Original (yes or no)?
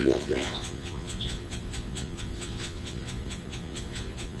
no